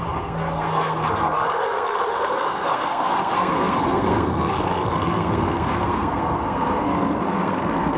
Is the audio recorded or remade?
remade